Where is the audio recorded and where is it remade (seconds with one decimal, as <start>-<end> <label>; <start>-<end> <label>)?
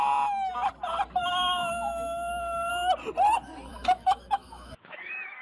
0.0-1.2 recorded; 1.2-2.7 remade; 2.7-3.7 recorded; 3.7-5.4 remade